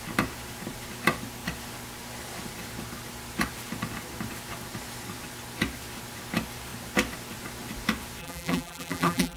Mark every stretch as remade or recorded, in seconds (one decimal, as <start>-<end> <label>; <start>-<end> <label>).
0.0-8.2 recorded; 8.2-9.4 remade